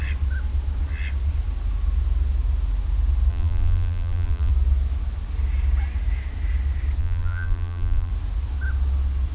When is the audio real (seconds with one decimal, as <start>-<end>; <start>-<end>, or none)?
0.0-3.3; 4.5-7.0; 8.1-9.3